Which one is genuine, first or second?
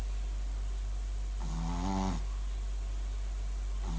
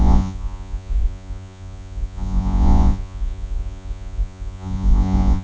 first